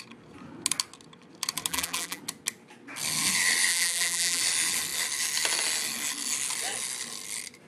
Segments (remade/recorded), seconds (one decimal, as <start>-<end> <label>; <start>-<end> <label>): 0.0-1.7 recorded; 1.7-2.2 remade; 2.2-3.7 recorded; 3.7-4.4 remade; 4.4-7.7 recorded